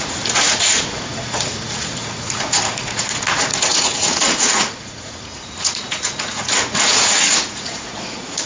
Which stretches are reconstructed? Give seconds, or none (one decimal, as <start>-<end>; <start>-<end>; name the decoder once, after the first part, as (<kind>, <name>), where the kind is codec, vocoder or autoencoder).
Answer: 0.0-8.5 (vocoder, Vocos)